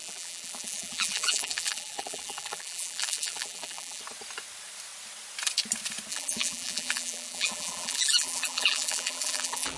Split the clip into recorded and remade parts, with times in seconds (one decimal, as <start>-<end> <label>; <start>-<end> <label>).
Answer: 0.0-4.0 remade; 4.0-6.1 recorded; 6.1-9.8 remade